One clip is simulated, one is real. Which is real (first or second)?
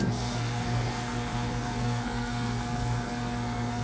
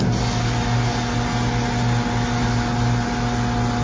second